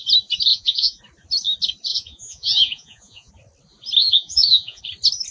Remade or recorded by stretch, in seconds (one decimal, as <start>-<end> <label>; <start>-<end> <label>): 0.0-0.5 recorded; 0.5-1.0 remade; 1.0-1.9 recorded; 1.9-3.3 remade; 3.3-4.0 recorded; 4.0-4.8 remade; 4.8-5.3 recorded